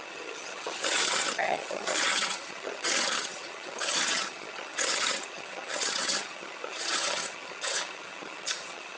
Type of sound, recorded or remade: remade